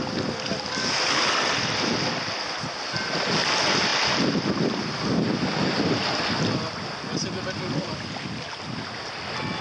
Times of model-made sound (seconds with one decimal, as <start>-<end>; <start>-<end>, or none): none